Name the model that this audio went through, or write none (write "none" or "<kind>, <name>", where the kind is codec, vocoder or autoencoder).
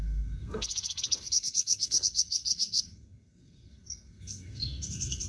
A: codec, SNAC